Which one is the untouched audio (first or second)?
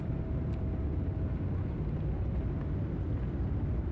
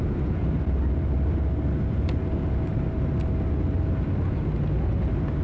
second